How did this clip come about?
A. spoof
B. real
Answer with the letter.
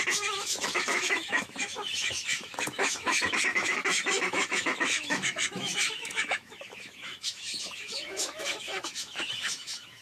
A